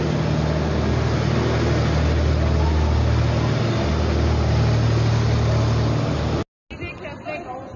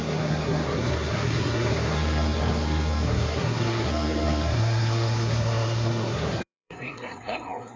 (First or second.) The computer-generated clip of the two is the second